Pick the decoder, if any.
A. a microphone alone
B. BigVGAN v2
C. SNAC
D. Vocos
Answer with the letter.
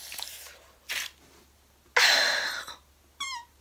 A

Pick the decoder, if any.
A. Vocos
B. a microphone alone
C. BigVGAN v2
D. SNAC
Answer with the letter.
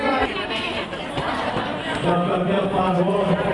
C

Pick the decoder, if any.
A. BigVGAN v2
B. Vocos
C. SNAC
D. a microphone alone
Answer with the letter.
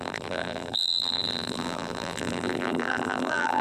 A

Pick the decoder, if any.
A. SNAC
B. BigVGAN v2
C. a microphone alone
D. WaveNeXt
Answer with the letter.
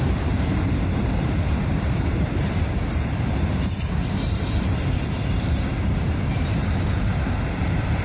B